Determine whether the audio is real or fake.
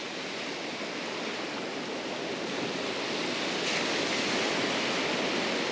real